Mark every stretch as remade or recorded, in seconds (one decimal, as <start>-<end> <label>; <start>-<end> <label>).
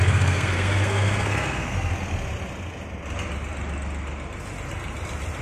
0.0-1.9 remade; 1.9-5.4 recorded